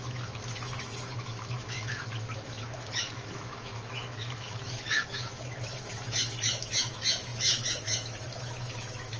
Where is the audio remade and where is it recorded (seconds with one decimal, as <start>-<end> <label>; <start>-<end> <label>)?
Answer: 0.0-9.2 remade